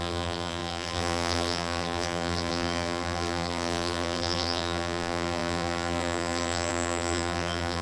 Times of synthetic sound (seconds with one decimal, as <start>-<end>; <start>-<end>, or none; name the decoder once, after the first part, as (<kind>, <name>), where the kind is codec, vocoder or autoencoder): 0.0-7.8 (vocoder, BigVGAN v2)